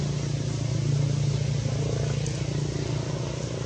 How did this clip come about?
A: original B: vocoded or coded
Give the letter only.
A